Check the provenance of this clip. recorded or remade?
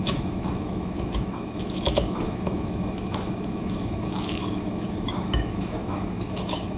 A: remade